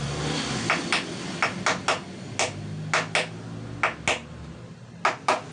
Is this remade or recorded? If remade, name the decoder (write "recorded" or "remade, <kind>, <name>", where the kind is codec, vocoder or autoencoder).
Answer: recorded